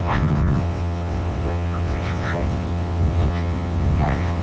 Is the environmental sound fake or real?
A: fake